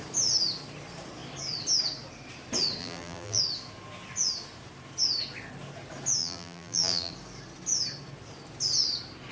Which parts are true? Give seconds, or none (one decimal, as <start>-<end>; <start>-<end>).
0.0-2.8; 3.4-6.2; 7.1-9.3

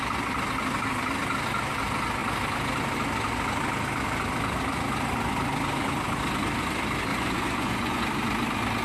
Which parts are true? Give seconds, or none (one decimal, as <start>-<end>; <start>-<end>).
0.0-7.1; 8.0-8.8

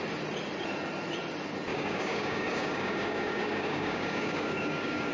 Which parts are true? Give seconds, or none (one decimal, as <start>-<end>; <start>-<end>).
0.0-1.7

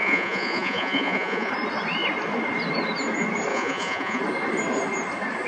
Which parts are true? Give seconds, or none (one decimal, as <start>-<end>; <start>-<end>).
1.5-3.5; 4.2-5.5